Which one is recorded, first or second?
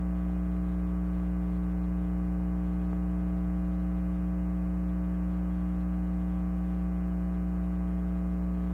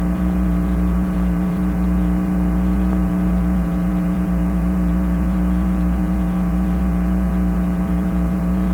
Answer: first